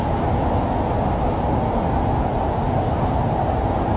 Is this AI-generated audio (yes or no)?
no